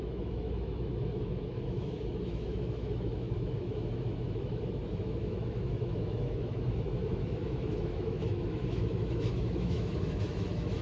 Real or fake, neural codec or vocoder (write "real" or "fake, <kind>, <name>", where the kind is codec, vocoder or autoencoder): fake, autoencoder, DAC-VAE